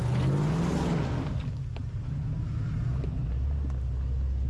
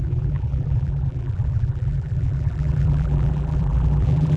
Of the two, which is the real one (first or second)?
first